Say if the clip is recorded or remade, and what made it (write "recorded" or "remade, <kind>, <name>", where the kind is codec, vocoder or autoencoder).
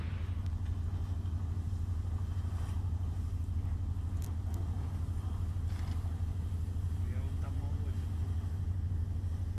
recorded